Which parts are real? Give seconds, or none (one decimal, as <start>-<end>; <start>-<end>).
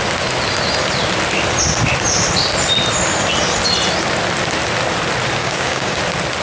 0.0-5.4; 6.0-6.4